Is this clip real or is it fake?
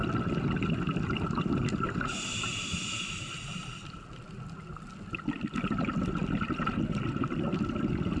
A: real